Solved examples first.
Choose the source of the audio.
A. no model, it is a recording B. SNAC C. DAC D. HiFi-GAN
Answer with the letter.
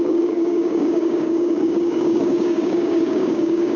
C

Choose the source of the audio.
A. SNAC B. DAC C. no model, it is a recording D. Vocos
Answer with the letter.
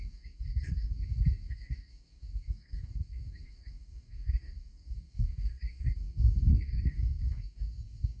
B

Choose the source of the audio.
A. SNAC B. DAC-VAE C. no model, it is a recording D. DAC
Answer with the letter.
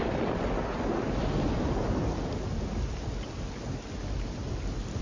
C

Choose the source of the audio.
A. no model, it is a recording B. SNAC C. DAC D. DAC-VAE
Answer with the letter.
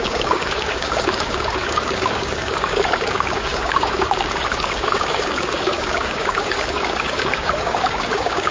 C